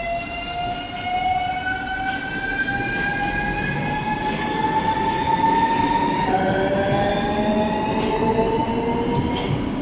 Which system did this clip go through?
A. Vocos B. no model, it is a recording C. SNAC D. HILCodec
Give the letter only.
B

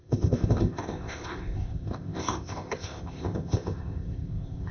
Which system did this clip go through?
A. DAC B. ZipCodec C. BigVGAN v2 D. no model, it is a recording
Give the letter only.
B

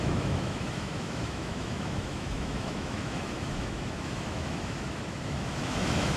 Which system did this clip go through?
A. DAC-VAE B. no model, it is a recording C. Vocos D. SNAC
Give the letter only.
A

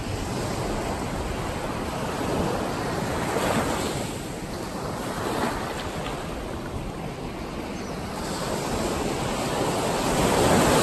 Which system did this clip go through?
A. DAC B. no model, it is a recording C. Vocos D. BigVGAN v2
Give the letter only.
B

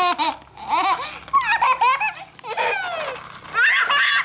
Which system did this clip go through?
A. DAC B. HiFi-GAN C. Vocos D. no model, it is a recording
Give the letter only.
D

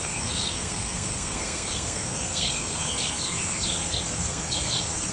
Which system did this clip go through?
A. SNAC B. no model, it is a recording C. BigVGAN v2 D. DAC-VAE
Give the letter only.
A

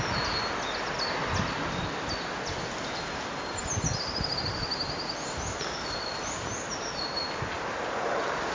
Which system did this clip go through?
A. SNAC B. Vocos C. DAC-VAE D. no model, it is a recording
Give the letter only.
D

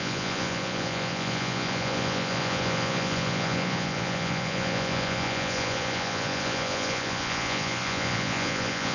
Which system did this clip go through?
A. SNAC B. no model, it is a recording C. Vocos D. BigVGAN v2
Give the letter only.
C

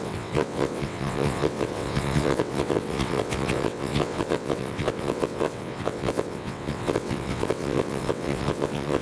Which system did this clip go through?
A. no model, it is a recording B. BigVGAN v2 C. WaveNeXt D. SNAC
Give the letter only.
C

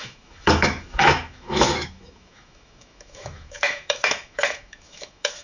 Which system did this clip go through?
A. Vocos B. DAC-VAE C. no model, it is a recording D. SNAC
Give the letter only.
B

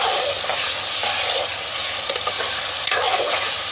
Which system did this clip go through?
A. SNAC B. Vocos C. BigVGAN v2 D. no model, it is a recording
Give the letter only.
C